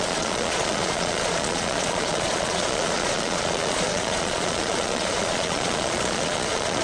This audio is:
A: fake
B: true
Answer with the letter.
A